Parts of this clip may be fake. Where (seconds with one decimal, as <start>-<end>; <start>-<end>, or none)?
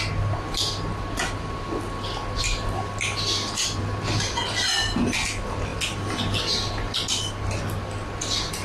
none